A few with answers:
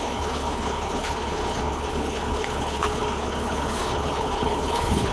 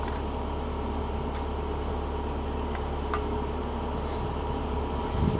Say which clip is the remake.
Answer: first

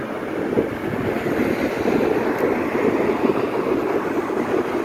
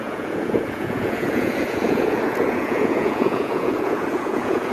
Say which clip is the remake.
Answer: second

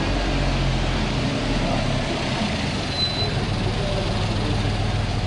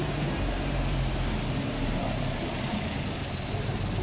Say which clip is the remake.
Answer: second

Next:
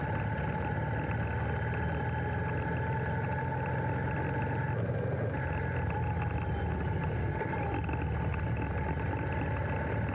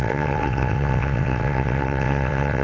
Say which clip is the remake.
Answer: second